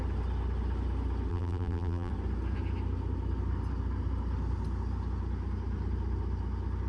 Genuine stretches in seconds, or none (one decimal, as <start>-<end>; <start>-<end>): 0.0-1.3; 2.1-6.9